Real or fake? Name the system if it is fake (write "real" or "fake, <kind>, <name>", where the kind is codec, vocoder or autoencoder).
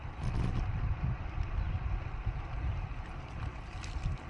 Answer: real